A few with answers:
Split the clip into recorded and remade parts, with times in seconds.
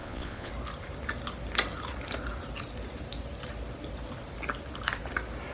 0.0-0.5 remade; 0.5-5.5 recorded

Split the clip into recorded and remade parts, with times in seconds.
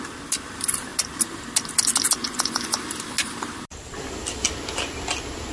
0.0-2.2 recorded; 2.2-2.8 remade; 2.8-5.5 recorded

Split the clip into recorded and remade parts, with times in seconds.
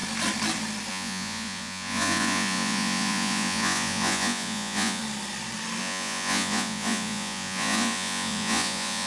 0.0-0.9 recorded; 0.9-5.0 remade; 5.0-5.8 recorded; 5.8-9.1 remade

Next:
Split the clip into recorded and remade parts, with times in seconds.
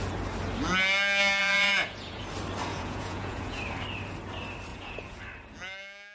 0.0-1.4 recorded; 1.4-2.2 remade; 2.2-2.7 recorded; 2.7-3.6 remade; 3.6-4.7 recorded; 4.7-5.2 remade; 5.2-6.1 recorded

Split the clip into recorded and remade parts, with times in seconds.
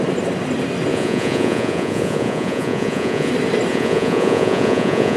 0.0-0.9 recorded; 0.9-3.3 remade; 3.3-3.7 recorded; 3.7-5.2 remade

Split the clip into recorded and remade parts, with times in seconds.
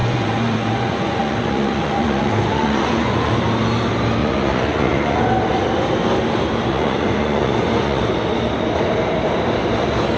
0.0-3.4 remade; 3.4-4.2 recorded; 4.2-5.2 remade; 5.2-6.7 recorded; 6.7-8.0 remade; 8.0-10.2 recorded